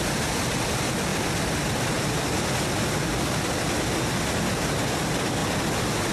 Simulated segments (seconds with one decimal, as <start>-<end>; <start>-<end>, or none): none